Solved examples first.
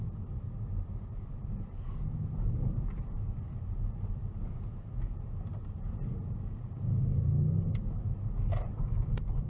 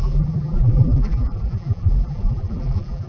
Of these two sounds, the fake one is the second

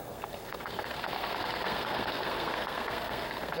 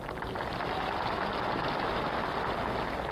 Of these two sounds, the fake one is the first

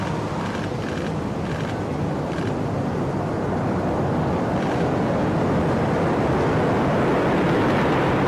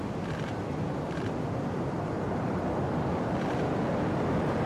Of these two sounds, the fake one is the second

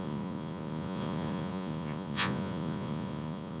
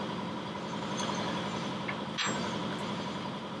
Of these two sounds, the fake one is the first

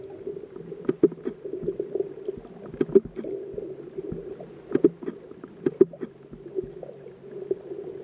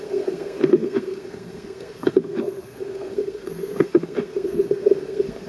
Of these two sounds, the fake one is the second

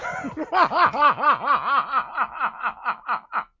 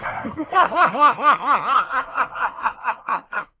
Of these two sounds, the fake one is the second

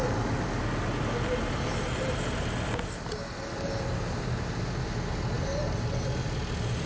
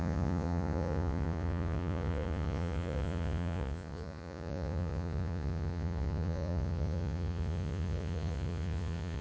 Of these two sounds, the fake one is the second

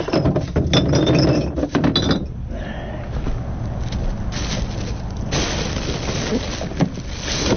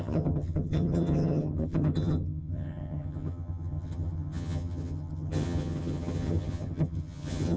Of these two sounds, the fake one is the second